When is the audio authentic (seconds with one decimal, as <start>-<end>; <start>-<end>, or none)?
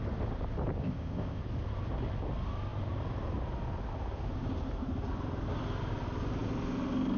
0.0-0.8; 1.4-7.2